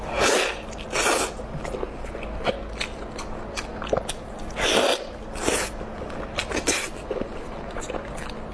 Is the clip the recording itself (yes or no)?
yes